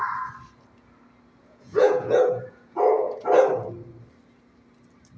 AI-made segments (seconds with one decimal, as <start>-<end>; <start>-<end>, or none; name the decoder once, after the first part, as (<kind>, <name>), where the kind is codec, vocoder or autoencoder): 1.4-3.2 (vocoder, Vocos)